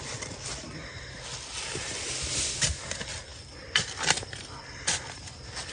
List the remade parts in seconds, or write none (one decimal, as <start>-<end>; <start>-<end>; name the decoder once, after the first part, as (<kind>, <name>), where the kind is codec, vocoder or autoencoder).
none